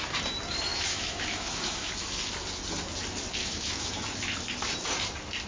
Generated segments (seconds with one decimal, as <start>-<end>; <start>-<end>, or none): 0.7-1.9; 3.4-3.9